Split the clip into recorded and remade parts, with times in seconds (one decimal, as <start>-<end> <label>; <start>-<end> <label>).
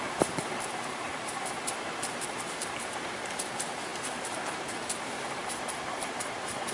0.0-6.7 remade